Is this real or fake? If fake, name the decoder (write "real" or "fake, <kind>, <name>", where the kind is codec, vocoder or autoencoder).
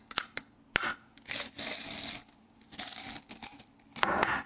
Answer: real